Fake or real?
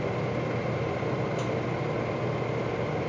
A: real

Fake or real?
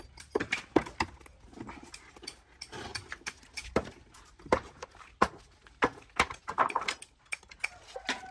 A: real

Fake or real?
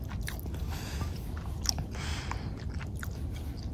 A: real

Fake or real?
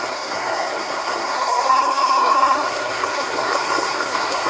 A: fake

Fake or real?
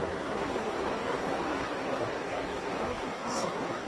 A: fake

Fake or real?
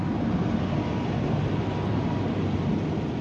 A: real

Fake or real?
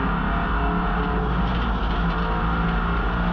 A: real